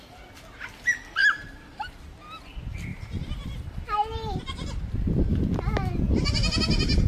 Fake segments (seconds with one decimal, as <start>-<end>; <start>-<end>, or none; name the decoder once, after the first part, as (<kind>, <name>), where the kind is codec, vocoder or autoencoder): 1.2-2.0 (vocoder, BigVGAN v2); 2.9-5.4